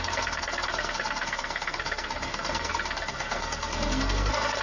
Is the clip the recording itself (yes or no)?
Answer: no